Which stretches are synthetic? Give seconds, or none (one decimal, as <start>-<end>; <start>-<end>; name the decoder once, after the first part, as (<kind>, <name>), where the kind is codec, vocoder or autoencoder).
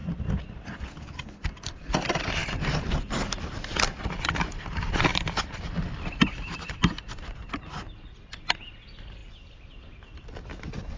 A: 5.1-7.8 (vocoder, BigVGAN v2)